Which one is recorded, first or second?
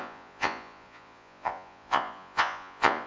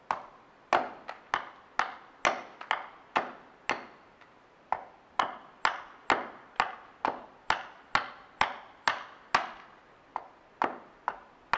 second